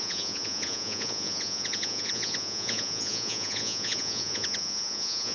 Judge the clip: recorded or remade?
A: remade